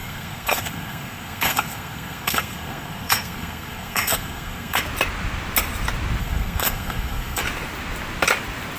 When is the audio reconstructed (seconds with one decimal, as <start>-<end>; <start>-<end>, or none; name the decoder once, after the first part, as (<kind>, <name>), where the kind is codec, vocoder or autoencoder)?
0.0-4.8 (codec, SNAC); 6.2-7.4